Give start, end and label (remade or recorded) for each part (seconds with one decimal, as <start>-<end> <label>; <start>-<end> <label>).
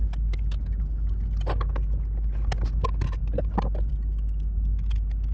0.0-5.3 recorded